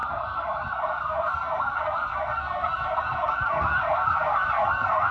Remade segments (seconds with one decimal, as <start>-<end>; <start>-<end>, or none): 0.0-5.1